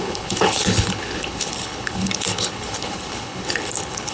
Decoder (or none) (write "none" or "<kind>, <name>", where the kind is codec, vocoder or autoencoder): codec, HILCodec